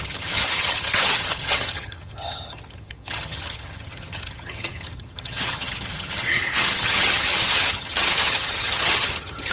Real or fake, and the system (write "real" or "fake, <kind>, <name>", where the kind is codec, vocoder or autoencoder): fake, vocoder, HiFi-GAN